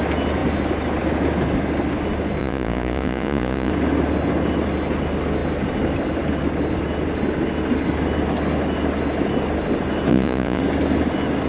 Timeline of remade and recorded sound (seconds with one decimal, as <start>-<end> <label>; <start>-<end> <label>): 0.0-2.4 recorded; 2.4-3.7 remade; 3.7-10.1 recorded; 10.1-10.6 remade; 10.6-11.5 recorded